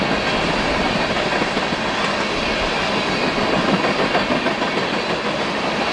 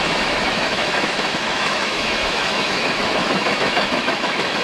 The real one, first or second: first